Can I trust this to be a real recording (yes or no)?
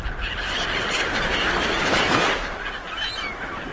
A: yes